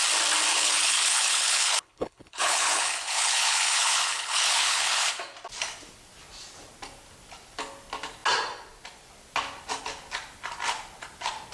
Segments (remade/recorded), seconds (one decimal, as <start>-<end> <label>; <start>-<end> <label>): 0.0-0.5 recorded; 0.5-5.1 remade; 5.1-11.5 recorded